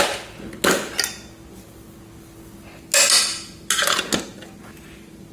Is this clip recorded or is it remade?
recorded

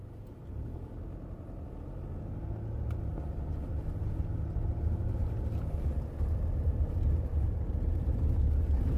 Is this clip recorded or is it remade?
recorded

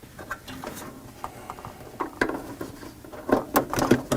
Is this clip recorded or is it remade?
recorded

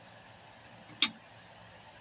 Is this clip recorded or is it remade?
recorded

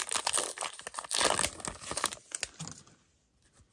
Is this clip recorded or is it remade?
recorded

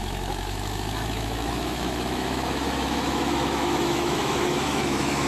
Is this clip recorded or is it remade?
remade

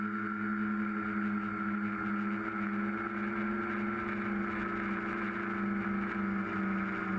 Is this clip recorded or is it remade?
recorded